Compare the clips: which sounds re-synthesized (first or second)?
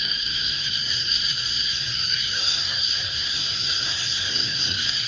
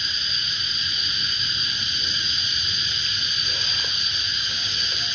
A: first